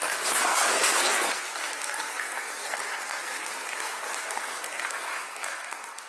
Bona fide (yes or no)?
no